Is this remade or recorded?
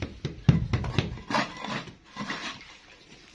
recorded